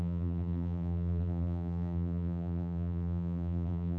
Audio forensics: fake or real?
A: fake